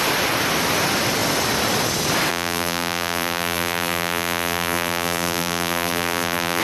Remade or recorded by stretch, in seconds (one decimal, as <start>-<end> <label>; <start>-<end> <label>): 0.0-2.3 recorded; 2.3-6.6 remade

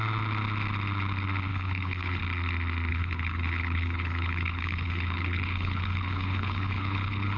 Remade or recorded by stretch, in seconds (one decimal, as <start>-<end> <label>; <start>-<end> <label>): 0.0-1.5 recorded; 1.5-2.2 remade; 2.2-2.9 recorded; 2.9-7.4 remade

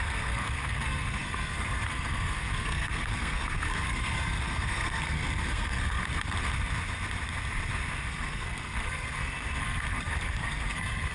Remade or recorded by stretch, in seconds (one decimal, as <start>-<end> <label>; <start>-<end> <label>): 0.0-6.0 remade; 6.0-8.1 recorded; 8.1-11.1 remade

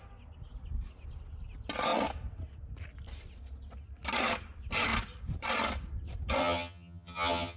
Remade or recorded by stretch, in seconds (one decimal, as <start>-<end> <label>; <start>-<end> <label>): 0.0-6.4 recorded; 6.4-7.6 remade

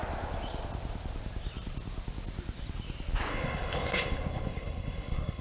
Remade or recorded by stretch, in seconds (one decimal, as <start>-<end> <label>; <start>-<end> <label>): 0.0-3.3 recorded; 3.3-5.4 remade

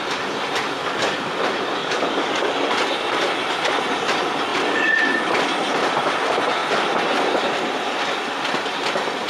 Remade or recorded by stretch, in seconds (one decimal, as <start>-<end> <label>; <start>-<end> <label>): 0.0-0.8 recorded; 0.8-1.3 remade; 1.3-1.8 recorded; 1.8-2.5 remade; 2.5-9.3 recorded

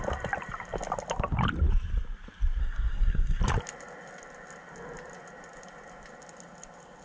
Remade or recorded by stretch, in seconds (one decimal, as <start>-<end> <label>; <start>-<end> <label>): 0.0-2.6 recorded; 2.6-3.4 remade; 3.4-7.0 recorded